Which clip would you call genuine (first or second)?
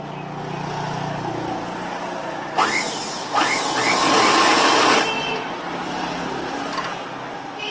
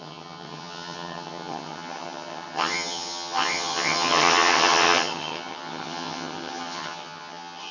first